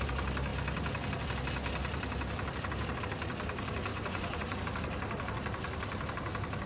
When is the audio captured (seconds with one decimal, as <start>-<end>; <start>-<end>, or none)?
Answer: 0.0-3.9; 4.6-6.7